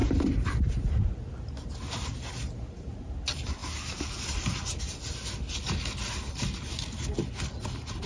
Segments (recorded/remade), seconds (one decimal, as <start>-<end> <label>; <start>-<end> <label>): 0.0-8.1 recorded